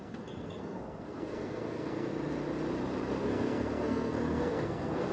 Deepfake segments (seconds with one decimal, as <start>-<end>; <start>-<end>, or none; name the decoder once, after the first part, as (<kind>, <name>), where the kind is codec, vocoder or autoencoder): 0.0-2.1 (codec, SNAC); 3.2-5.1